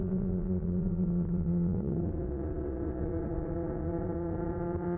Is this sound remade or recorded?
remade